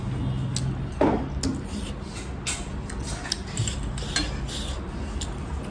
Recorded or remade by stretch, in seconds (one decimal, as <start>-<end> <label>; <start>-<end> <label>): 0.0-5.7 recorded